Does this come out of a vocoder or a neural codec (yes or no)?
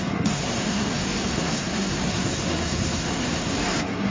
yes